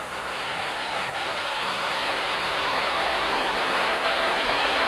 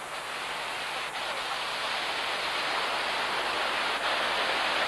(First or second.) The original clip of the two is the second